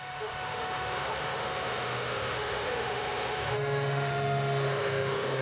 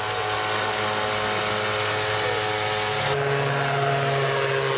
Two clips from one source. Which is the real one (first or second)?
second